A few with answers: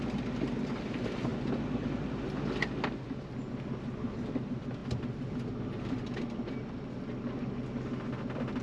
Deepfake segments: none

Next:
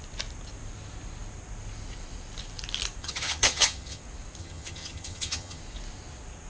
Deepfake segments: 3.0-4.0 (vocoder, HiFi-GAN); 4.4-5.6

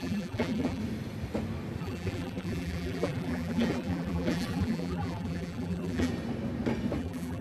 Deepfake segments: 0.0-0.8 (vocoder, BigVGAN v2); 1.8-6.1; 7.0-7.4

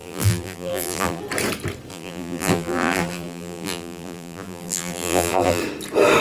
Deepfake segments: 0.0-1.2 (vocoder, BigVGAN v2); 1.9-5.6

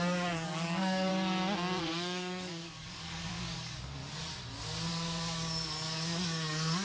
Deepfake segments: 0.0-1.1 (codec, DAC); 1.8-4.0; 4.9-6.8